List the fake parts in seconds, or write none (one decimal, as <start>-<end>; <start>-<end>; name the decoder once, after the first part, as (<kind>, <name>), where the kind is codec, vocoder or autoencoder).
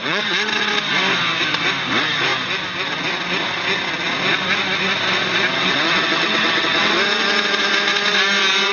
0.0-0.7 (vocoder, WaveNeXt); 5.6-7.0